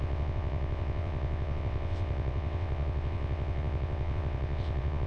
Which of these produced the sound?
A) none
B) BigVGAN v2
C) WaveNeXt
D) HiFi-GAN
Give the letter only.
C